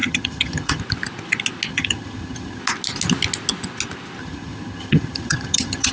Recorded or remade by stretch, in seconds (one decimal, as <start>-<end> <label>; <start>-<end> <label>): 0.0-0.8 remade; 0.8-1.7 recorded; 1.7-2.6 remade; 2.6-4.2 recorded; 4.2-5.9 remade